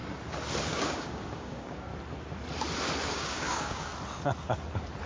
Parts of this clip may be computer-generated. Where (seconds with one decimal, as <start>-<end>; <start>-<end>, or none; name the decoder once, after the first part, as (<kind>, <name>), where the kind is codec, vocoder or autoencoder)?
0.6-1.9 (codec, DAC); 3.1-3.9